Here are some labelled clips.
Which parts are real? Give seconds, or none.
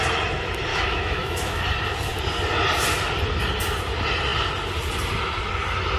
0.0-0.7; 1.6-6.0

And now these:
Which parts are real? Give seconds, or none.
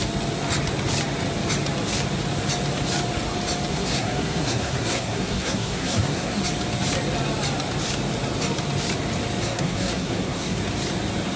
0.0-3.7; 6.4-9.4; 10.6-11.4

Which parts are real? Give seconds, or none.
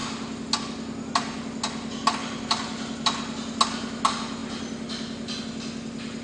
0.0-6.2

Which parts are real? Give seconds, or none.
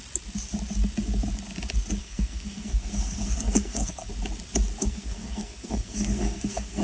0.0-2.0; 4.1-4.8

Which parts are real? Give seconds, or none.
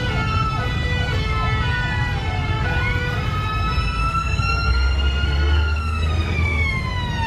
0.0-4.0; 6.7-7.3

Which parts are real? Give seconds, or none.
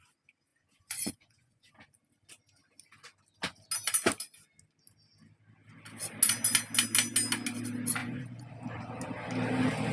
0.0-0.5; 1.7-8.0; 8.5-9.9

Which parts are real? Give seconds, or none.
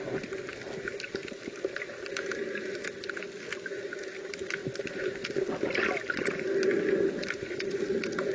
0.0-8.3